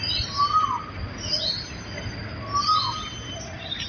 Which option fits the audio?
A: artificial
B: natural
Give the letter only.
B